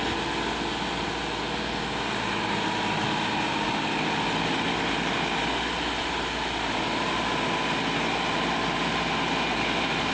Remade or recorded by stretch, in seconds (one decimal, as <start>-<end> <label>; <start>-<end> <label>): 0.0-10.1 recorded